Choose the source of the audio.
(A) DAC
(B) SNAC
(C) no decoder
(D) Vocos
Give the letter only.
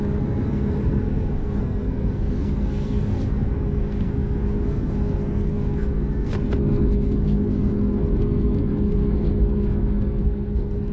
B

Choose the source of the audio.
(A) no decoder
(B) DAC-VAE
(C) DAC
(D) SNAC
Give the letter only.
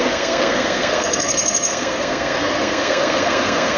D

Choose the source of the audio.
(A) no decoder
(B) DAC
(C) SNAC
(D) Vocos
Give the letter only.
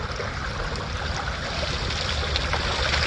A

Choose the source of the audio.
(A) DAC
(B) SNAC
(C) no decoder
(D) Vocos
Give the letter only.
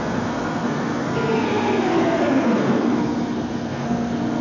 B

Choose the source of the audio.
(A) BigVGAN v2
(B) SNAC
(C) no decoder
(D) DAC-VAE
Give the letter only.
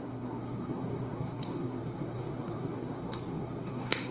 B